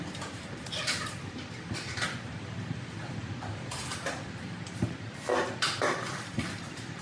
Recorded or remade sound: remade